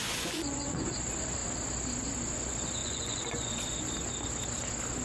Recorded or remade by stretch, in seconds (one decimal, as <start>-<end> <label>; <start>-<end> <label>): 0.0-0.9 remade; 0.9-2.8 recorded; 2.8-3.5 remade; 3.5-5.0 recorded